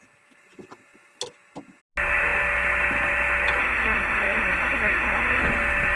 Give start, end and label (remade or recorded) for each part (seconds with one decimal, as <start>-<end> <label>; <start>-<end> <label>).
0.0-3.6 recorded; 3.6-5.4 remade; 5.4-6.0 recorded